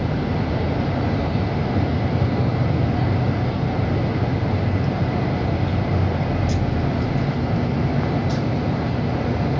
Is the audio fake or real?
real